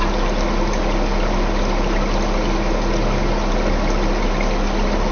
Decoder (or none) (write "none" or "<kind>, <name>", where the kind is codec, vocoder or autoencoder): none